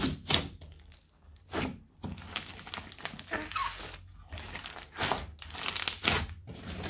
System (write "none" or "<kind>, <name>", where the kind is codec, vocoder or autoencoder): none